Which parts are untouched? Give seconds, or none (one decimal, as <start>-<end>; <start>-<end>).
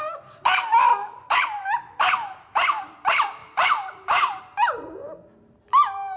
0.0-1.0; 2.8-3.4; 4.4-6.2